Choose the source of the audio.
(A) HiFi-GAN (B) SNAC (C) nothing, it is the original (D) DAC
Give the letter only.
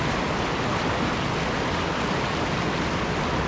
C